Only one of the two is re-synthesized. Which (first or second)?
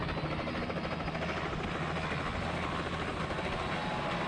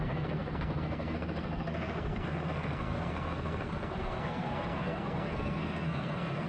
second